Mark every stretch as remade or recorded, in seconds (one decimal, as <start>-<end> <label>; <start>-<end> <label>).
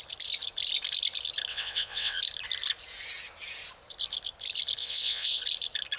0.0-1.5 recorded; 1.5-2.2 remade; 2.2-4.8 recorded; 4.8-5.4 remade; 5.4-6.0 recorded